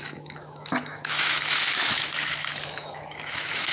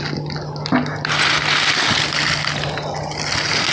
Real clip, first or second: second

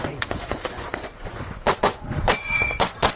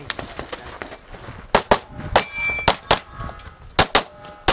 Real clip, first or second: second